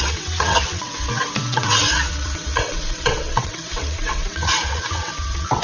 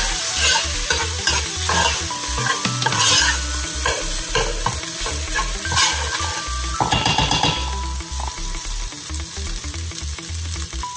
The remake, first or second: first